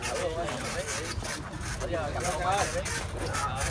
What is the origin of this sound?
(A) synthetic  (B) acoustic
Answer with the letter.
B